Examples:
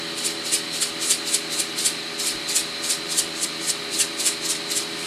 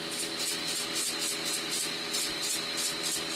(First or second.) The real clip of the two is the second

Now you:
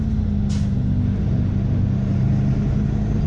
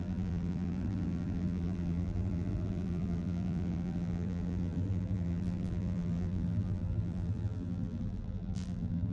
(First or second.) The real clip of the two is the first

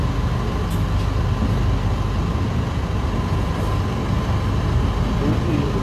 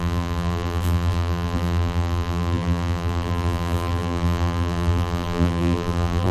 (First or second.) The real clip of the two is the first